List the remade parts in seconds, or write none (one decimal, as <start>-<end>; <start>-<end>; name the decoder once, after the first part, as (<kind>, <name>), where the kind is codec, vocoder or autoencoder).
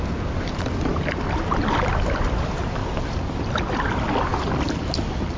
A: none